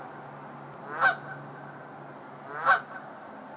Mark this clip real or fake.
real